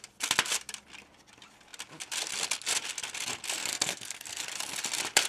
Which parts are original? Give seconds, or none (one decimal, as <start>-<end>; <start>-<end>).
0.0-3.7; 4.4-5.3